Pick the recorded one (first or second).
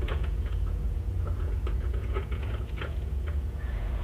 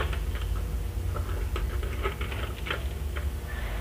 second